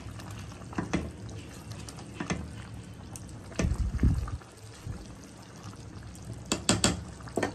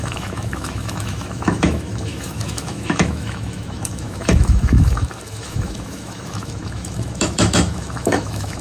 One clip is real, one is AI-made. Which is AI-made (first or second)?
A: second